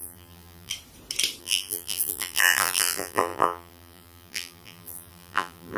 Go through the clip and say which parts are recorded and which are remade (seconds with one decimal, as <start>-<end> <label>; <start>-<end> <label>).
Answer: 0.0-0.7 remade; 0.7-1.4 recorded; 1.4-5.8 remade